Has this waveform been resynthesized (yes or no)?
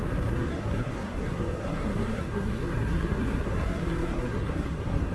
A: yes